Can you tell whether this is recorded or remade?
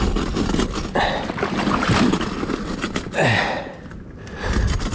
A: recorded